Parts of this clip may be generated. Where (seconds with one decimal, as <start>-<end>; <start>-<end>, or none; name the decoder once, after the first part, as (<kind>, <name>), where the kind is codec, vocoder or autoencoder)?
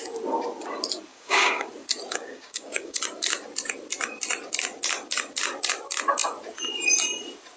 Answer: 1.1-1.7 (codec, DAC); 2.1-3.0